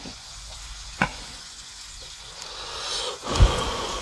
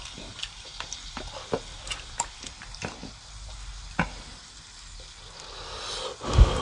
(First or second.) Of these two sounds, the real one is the second